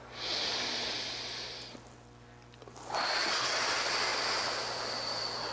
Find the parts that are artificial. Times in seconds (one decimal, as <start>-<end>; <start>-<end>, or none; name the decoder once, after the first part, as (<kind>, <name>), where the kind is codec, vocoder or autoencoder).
none